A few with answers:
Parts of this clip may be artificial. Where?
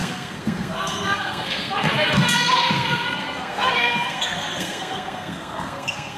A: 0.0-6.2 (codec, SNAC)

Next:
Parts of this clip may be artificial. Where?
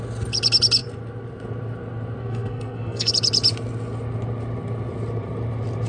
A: 2.2-3.1 (codec, SNAC)